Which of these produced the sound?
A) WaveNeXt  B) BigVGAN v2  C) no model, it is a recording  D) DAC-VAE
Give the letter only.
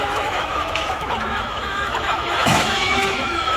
D